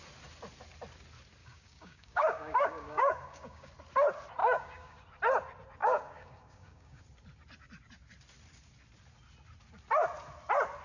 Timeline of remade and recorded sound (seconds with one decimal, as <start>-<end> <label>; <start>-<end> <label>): 0.0-1.4 recorded; 1.4-3.7 remade; 3.7-4.4 recorded; 4.4-5.0 remade; 5.0-5.8 recorded; 5.8-7.0 remade; 7.0-10.8 recorded